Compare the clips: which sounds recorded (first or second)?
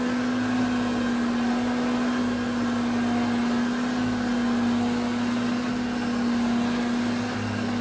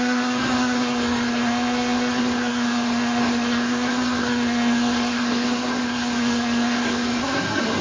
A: first